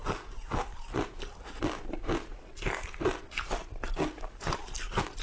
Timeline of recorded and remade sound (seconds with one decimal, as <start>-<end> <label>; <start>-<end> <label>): 0.0-5.2 recorded